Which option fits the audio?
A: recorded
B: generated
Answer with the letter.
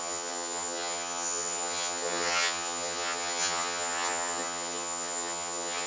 B